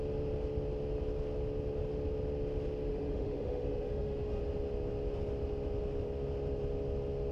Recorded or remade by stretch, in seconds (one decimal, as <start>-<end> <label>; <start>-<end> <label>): 0.0-2.9 recorded; 2.9-4.4 remade; 4.4-7.3 recorded